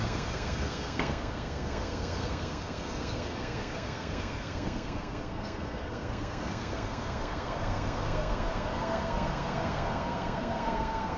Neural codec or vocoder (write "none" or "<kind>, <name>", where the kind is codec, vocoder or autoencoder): codec, SNAC